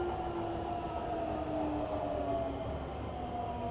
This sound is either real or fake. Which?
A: real